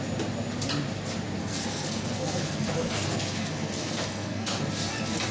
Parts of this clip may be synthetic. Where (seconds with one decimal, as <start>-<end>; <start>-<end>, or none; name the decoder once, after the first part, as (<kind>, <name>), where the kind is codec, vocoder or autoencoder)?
1.4-4.6 (codec, SNAC)